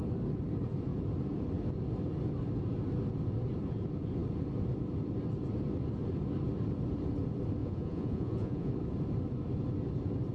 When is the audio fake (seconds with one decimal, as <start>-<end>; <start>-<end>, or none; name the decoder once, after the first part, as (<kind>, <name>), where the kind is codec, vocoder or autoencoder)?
7.6-8.7 (vocoder, Vocos)